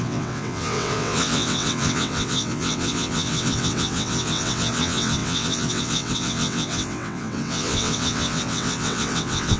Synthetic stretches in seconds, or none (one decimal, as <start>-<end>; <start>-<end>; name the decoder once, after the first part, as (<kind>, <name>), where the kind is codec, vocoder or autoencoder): 0.0-9.6 (vocoder, WaveNeXt)

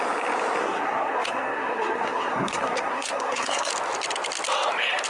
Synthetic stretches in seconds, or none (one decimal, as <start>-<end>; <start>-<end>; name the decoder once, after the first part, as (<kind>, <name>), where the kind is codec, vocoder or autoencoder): 0.6-3.7 (codec, SNAC)

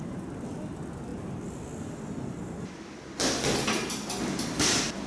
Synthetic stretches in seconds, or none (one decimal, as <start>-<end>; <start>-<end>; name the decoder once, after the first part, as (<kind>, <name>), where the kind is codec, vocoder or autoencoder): none

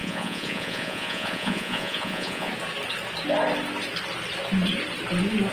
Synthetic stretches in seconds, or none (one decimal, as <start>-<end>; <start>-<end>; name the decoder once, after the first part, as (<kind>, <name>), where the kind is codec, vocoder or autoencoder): 0.0-2.5 (vocoder, Vocos)